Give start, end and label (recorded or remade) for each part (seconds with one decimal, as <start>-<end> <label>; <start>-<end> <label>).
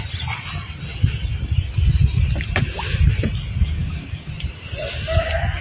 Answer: 0.0-3.8 recorded; 3.8-4.3 remade; 4.3-5.6 recorded